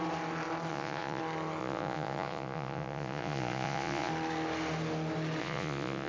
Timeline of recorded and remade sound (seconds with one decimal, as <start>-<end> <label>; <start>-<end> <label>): 0.0-0.7 recorded; 0.7-1.2 remade; 1.2-1.6 recorded; 1.6-4.1 remade; 4.1-5.4 recorded; 5.4-6.1 remade